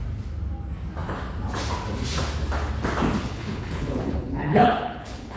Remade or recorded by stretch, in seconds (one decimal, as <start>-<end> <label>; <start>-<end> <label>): 0.0-3.2 recorded; 3.2-5.4 remade